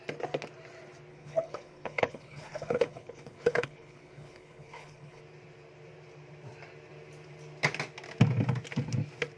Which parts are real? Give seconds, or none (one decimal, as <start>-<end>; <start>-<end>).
0.0-1.1; 5.2-9.4